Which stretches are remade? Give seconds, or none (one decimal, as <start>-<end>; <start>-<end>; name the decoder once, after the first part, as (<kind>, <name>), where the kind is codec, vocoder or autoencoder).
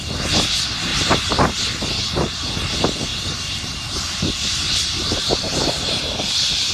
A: 0.9-1.8 (vocoder, BigVGAN v2); 3.1-6.0